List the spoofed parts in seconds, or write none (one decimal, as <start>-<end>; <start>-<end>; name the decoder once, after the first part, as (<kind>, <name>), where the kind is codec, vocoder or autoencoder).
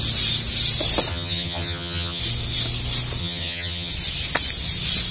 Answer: 1.1-2.2 (vocoder, HiFi-GAN); 3.2-3.9